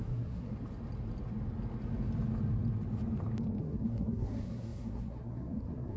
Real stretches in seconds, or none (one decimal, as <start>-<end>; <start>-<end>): 0.5-3.6

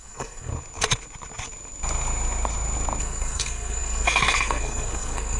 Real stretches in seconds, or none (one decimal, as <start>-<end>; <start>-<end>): 0.5-3.0

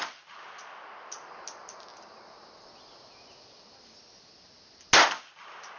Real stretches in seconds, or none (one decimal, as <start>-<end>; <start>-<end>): 0.0-5.8

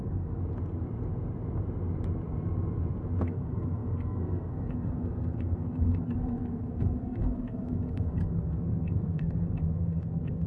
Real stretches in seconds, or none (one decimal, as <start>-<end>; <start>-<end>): 0.4-3.2

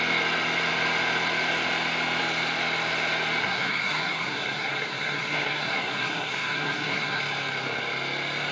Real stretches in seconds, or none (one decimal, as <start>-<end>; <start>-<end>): 0.0-3.4; 7.2-8.5

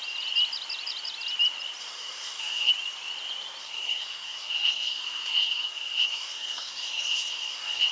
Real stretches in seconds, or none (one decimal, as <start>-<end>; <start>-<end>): 0.0-1.8; 2.7-3.6

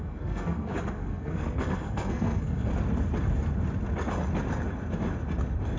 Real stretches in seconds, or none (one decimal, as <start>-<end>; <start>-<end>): 2.7-5.8

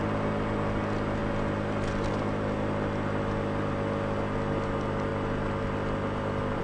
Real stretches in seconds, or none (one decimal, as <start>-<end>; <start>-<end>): 0.0-6.6